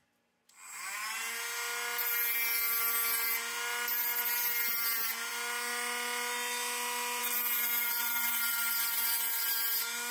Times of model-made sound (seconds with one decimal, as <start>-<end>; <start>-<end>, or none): none